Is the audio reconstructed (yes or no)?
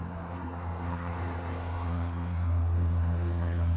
yes